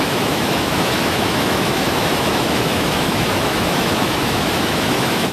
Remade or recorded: remade